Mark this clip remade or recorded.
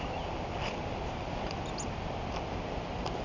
recorded